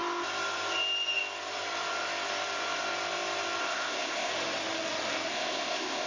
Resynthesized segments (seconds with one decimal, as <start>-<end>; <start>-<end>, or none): 3.6-4.3; 5.3-6.1

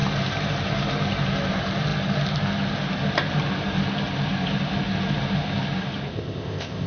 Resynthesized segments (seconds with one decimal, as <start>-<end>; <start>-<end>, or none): 6.1-6.9